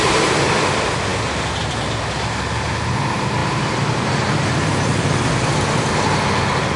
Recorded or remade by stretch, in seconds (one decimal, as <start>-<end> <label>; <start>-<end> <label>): 0.0-3.4 recorded; 3.4-5.3 remade; 5.3-6.8 recorded

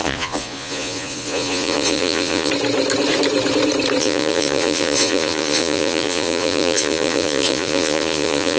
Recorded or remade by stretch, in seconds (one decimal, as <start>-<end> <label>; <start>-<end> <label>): 0.0-2.5 remade; 2.5-4.0 recorded; 4.0-8.6 remade

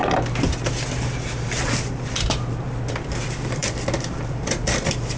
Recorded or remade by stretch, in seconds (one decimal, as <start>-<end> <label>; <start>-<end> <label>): 0.0-3.1 recorded; 3.1-5.2 remade

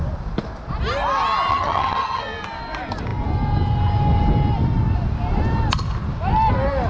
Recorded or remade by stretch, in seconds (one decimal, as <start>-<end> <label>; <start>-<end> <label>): 0.0-1.5 recorded; 1.5-2.2 remade; 2.2-6.9 recorded

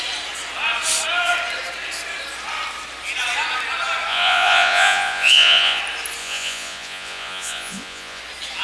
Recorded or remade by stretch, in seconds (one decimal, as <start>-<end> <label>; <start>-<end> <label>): 0.0-4.1 recorded; 4.1-5.8 remade; 5.8-6.2 recorded; 6.2-8.2 remade; 8.2-8.6 recorded

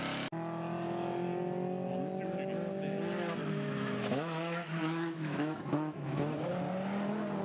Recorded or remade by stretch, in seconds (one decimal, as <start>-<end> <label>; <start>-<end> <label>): 0.0-3.4 recorded; 3.4-6.5 remade; 6.5-7.4 recorded

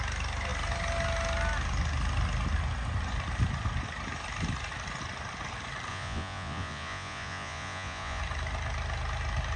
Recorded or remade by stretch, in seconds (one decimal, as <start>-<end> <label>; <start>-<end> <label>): 0.0-5.9 recorded; 5.9-8.2 remade; 8.2-9.6 recorded